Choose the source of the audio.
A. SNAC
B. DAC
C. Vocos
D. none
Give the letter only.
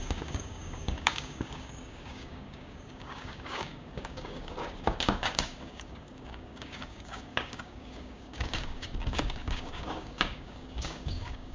B